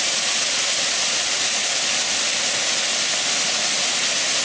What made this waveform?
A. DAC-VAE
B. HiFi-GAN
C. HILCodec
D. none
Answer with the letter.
D